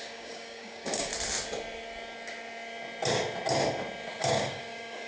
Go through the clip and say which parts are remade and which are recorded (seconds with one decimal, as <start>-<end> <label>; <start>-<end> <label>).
0.0-1.1 remade; 1.1-4.2 recorded; 4.2-5.1 remade